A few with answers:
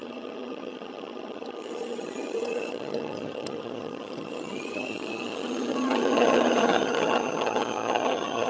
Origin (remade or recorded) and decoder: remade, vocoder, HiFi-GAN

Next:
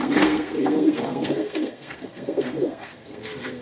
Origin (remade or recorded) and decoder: remade, codec, SNAC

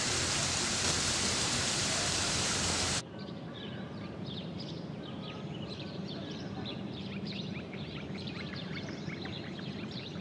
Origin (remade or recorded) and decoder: remade, vocoder, BigVGAN v2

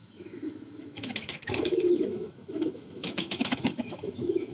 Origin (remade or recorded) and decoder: remade, autoencoder, DAC-VAE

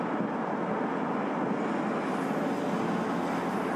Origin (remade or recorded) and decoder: recorded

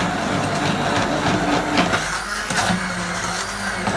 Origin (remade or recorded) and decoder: recorded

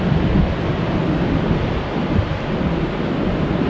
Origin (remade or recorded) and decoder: recorded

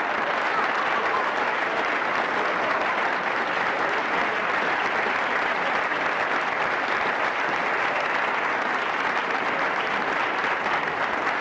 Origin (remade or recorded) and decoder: recorded